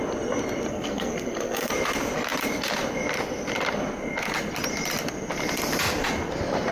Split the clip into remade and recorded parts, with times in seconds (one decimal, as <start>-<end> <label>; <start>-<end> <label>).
0.0-0.7 recorded; 0.7-1.7 remade; 1.7-6.7 recorded